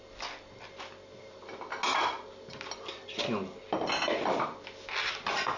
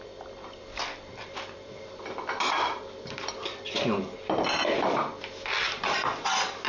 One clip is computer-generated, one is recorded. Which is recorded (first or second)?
first